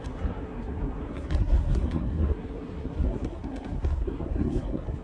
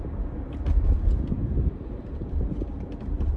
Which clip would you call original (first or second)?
second